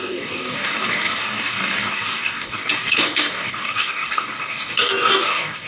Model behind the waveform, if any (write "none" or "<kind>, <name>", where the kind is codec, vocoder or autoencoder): codec, DAC